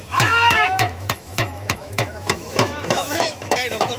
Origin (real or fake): fake